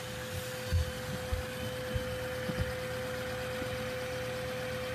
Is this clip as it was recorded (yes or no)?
yes